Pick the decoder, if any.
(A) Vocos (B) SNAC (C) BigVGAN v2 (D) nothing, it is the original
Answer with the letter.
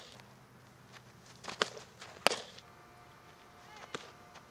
D